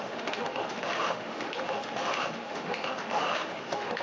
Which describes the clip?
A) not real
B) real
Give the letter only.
A